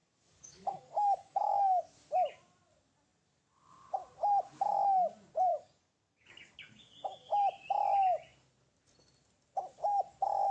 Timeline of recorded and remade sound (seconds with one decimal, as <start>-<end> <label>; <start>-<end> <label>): 0.0-1.8 remade; 1.8-5.5 recorded; 5.5-7.3 remade; 7.3-10.5 recorded